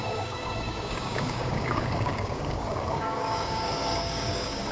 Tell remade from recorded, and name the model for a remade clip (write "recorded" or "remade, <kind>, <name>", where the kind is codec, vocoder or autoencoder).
remade, codec, DAC